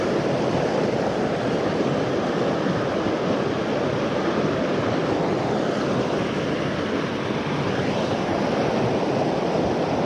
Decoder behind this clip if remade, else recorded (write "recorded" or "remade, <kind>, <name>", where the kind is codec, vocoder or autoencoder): recorded